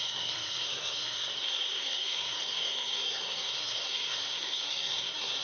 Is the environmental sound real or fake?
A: fake